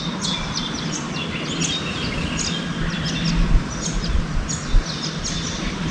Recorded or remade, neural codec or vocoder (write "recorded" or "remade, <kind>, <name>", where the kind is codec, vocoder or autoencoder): recorded